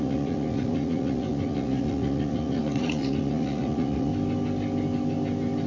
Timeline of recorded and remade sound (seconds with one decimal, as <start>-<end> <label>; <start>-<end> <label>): 0.0-4.1 remade; 4.1-5.7 recorded